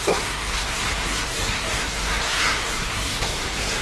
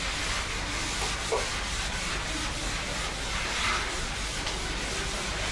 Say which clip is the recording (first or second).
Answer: second